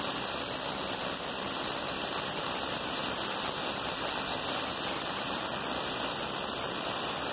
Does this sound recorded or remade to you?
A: recorded